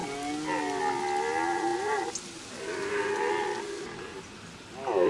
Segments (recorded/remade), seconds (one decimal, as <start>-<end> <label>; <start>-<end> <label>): 0.0-5.1 recorded